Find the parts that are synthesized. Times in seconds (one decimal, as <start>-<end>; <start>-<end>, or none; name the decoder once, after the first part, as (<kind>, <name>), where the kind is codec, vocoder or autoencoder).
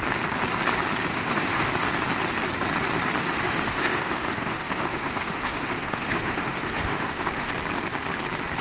1.1-1.7 (autoencoder, DAC-VAE); 3.2-7.5